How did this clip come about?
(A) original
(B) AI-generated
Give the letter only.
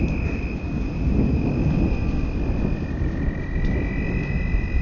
A